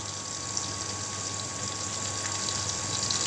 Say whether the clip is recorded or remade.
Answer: recorded